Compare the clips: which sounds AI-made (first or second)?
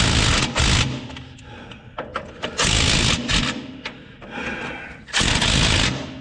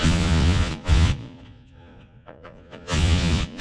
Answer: second